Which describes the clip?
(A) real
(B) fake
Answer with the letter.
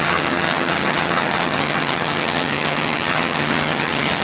B